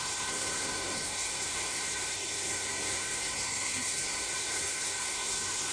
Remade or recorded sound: remade